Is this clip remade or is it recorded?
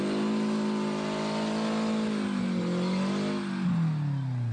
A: recorded